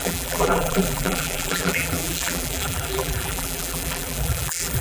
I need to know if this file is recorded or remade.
remade